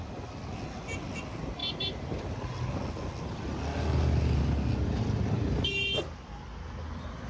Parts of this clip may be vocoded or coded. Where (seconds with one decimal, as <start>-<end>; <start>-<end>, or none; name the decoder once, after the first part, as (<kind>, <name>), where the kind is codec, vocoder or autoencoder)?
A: none